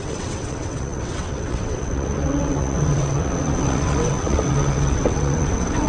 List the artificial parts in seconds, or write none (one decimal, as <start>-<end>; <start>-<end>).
0.0-5.9

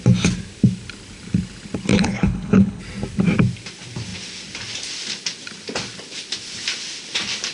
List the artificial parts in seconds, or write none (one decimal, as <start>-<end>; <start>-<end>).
1.9-2.8

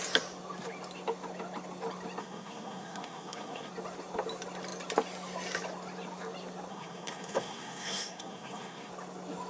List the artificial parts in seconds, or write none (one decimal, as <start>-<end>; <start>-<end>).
2.2-3.7; 6.7-8.9

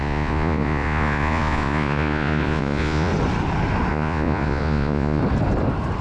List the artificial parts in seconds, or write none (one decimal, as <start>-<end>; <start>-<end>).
0.0-3.1; 3.9-5.2

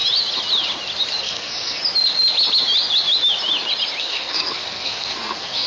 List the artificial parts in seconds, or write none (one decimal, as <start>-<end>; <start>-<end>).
1.2-1.8; 4.0-5.7

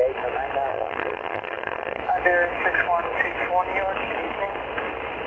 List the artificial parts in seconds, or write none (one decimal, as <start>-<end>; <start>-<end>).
0.7-2.0

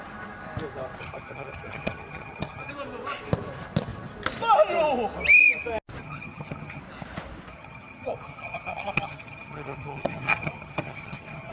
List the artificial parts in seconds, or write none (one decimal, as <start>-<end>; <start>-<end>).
1.0-2.7; 6.0-6.8; 7.5-11.5